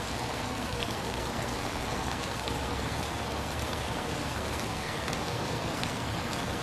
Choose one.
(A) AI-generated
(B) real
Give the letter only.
A